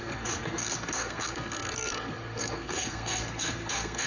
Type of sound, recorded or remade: remade